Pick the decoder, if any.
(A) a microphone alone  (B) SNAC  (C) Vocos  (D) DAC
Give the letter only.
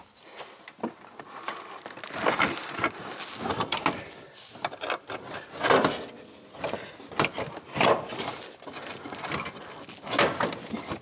A